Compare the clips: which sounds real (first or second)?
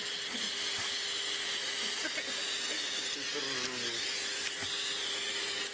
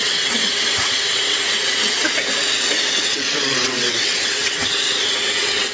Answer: first